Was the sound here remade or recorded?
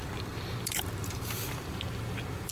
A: remade